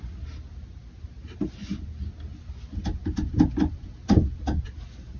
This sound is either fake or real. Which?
real